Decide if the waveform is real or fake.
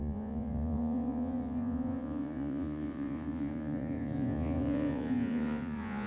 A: fake